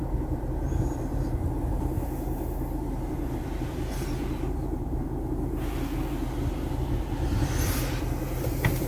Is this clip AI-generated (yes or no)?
yes